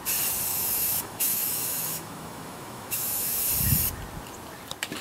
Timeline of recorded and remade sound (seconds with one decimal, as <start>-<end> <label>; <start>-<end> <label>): 0.0-0.5 recorded; 0.5-3.5 remade; 3.5-5.0 recorded

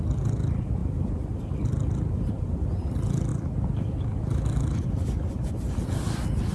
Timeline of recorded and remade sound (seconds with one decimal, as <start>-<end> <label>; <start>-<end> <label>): 0.0-6.5 recorded

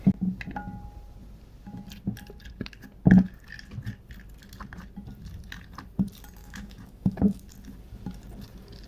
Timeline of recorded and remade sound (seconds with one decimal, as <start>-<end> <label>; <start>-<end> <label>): 0.0-6.4 recorded; 6.4-7.4 remade; 7.4-8.9 recorded